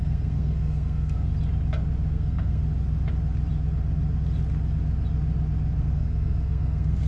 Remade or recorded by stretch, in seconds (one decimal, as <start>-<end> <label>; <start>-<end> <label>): 0.0-1.3 remade; 1.3-2.1 recorded; 2.1-2.6 remade; 2.6-5.8 recorded; 5.8-7.1 remade